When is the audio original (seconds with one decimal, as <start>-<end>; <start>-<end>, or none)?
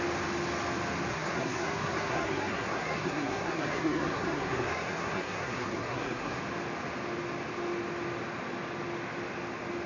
0.0-1.1; 6.4-9.9